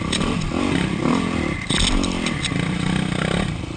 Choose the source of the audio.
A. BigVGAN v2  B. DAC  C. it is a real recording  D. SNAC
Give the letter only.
C